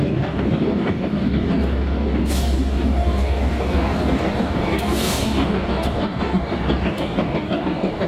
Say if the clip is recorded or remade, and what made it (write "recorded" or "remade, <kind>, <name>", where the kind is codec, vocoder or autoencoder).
remade, codec, DAC